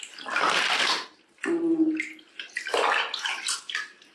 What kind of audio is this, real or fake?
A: real